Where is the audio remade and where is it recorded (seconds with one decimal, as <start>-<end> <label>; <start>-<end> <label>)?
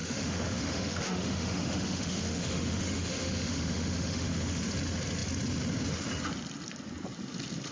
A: 0.0-4.6 remade; 4.6-7.7 recorded